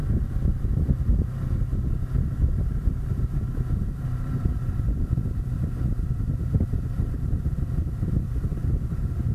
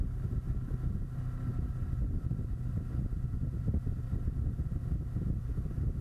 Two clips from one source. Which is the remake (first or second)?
first